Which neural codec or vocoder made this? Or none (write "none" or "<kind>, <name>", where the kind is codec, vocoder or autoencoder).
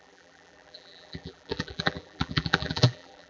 vocoder, BigVGAN v2